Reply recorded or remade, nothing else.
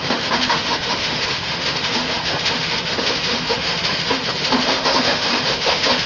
remade